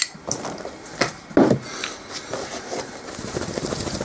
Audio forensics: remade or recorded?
recorded